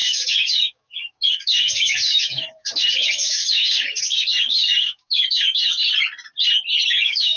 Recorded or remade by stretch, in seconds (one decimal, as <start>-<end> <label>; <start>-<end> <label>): 0.0-5.8 remade; 5.8-6.9 recorded; 6.9-7.4 remade